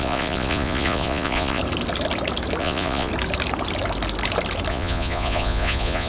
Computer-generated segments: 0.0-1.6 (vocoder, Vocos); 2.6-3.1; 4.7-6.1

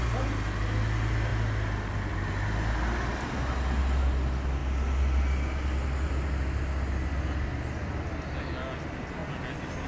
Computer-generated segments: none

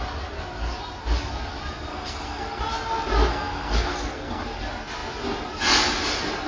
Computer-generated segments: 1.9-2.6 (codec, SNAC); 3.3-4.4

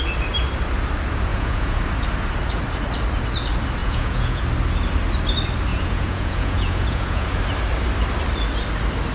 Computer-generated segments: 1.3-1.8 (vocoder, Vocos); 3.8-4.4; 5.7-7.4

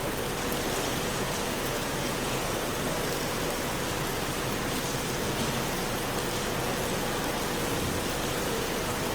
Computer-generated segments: 0.9-2.7 (vocoder, Vocos)

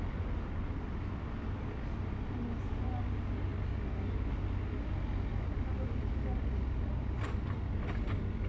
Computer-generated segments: none

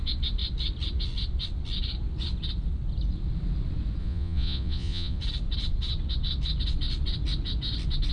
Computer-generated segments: 4.0-5.2 (vocoder, Vocos)

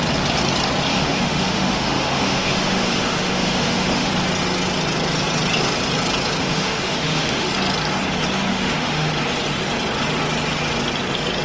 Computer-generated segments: 0.9-4.1 (autoencoder, DAC-VAE); 6.4-7.5; 8.5-9.1